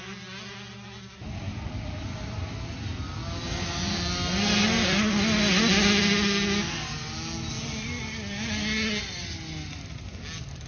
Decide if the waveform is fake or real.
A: real